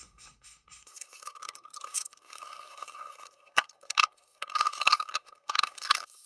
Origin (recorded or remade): remade